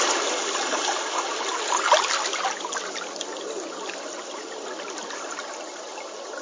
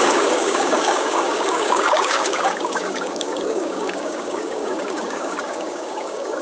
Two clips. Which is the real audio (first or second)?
first